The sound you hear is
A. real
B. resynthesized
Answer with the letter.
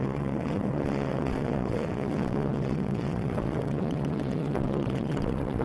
B